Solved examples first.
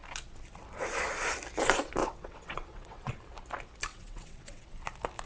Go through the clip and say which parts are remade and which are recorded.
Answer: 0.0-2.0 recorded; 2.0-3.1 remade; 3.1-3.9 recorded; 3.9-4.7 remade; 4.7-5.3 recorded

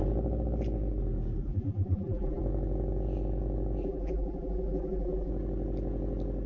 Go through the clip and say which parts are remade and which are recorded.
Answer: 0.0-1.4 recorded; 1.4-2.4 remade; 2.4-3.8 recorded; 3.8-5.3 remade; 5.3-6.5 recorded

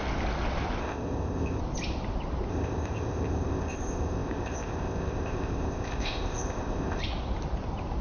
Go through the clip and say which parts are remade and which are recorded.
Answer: 0.0-0.8 recorded; 0.8-1.6 remade; 1.6-2.5 recorded; 2.5-7.0 remade; 7.0-8.0 recorded

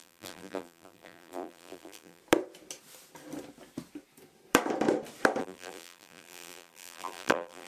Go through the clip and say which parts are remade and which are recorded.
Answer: 0.0-2.2 remade; 2.2-5.4 recorded; 5.4-7.7 remade

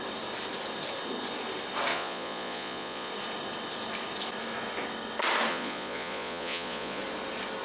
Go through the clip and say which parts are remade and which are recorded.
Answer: 0.0-1.9 recorded; 1.9-3.1 remade; 3.1-5.5 recorded; 5.5-7.0 remade; 7.0-7.6 recorded